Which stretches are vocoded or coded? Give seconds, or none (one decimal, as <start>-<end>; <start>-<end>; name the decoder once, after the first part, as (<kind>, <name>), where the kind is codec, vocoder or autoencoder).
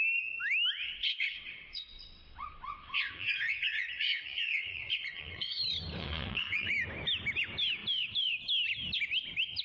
0.8-5.6 (vocoder, WaveNeXt); 6.0-6.7